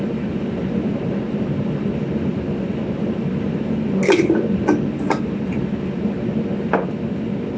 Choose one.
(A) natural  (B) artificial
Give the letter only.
A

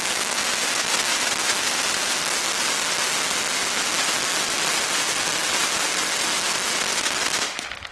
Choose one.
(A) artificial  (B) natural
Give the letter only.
B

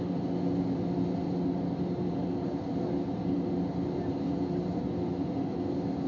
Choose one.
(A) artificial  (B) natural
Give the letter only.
B